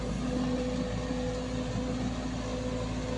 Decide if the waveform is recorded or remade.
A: recorded